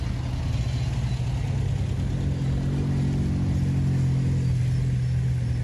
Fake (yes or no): no